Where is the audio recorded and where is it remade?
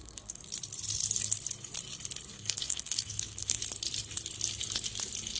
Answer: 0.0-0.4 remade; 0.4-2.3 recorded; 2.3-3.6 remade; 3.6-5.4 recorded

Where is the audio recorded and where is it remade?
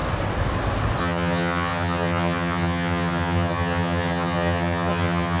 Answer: 0.0-1.0 recorded; 1.0-5.4 remade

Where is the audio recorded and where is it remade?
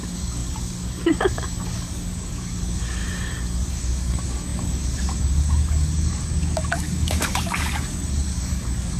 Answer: 0.0-3.0 remade; 3.0-3.7 recorded; 3.7-9.0 remade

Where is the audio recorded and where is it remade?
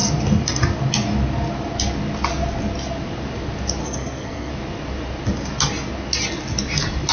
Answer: 0.0-3.8 recorded; 3.8-4.5 remade; 4.5-7.1 recorded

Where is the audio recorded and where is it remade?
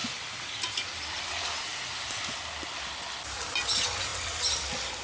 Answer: 0.0-5.0 recorded